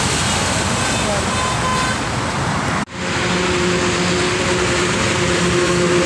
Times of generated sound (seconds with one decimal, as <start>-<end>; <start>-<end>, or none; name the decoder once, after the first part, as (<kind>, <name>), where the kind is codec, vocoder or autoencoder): none